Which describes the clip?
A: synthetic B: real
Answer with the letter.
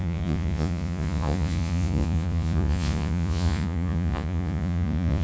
A